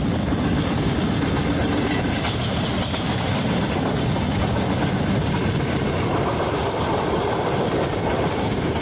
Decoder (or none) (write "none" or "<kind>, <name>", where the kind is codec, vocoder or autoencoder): none